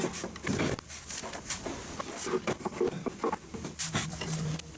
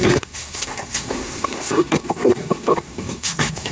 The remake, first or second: second